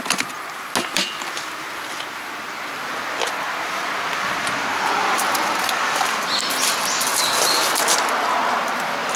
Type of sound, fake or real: real